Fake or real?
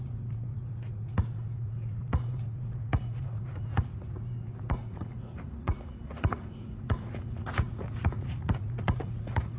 fake